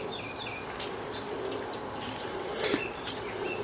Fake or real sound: real